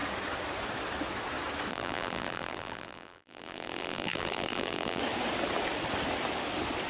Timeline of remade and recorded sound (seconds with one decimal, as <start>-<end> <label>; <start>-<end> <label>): 0.0-1.7 recorded; 1.7-5.0 remade; 5.0-6.9 recorded